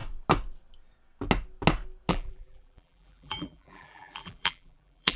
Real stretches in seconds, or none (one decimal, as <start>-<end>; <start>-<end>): 0.0-2.1